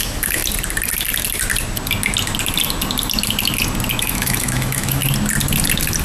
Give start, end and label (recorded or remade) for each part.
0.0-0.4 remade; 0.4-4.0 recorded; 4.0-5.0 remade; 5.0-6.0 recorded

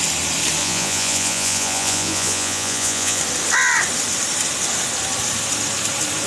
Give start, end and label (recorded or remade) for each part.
0.0-0.6 recorded; 0.6-3.2 remade; 3.2-6.3 recorded